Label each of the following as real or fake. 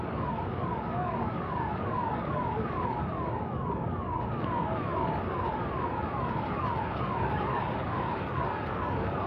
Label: fake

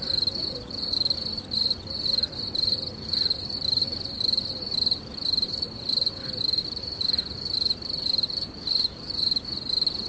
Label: real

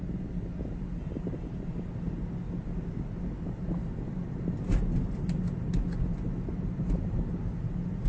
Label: real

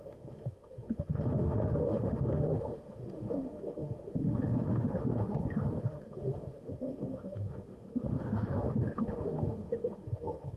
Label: fake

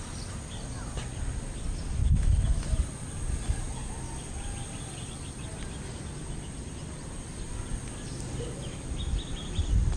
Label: real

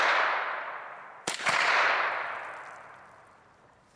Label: fake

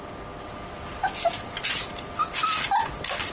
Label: real